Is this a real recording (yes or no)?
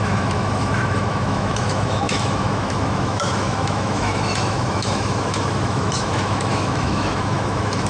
no